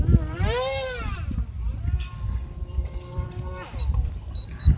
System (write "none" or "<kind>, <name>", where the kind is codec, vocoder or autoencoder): vocoder, BigVGAN v2